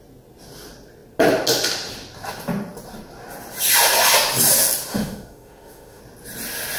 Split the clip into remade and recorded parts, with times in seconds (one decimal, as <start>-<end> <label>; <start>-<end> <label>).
0.0-4.9 recorded; 4.9-6.0 remade; 6.0-6.8 recorded